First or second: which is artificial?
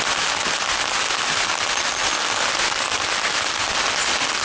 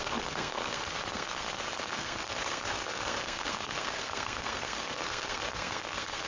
second